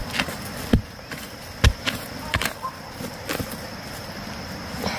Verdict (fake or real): real